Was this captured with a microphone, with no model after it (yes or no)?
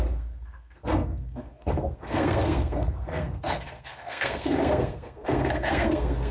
no